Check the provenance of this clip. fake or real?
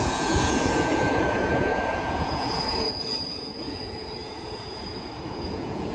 fake